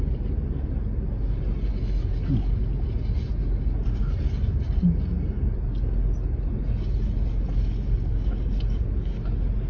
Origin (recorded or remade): recorded